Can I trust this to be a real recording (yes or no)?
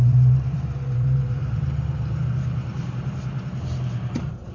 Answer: no